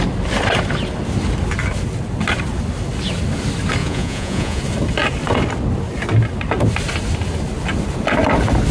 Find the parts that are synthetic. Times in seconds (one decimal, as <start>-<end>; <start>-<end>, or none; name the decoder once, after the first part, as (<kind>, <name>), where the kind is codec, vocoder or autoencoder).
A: 3.8-4.6 (vocoder, Vocos)